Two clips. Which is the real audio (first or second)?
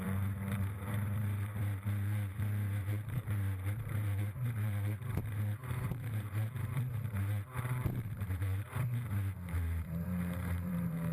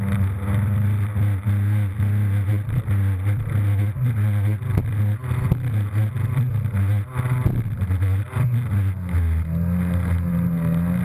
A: second